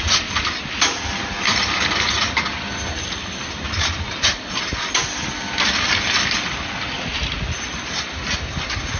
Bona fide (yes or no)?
yes